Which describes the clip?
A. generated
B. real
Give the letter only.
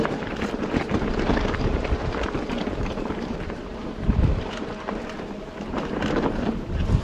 A